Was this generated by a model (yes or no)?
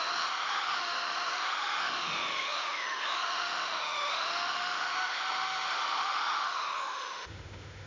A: yes